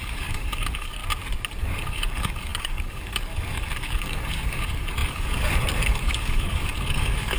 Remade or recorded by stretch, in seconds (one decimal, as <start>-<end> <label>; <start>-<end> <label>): 0.0-1.0 remade; 1.0-1.6 recorded; 1.6-7.4 remade